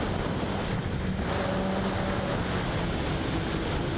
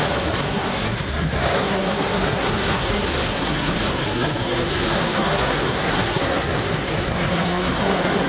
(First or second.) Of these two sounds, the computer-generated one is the second